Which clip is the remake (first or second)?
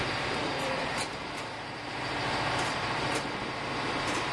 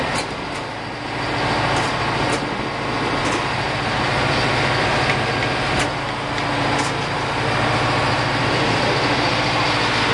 first